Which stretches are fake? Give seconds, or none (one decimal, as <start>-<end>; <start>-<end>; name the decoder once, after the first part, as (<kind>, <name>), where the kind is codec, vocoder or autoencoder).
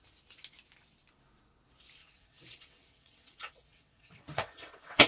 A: 2.0-5.1 (vocoder, WaveNeXt)